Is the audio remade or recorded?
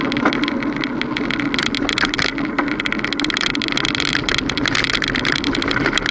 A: recorded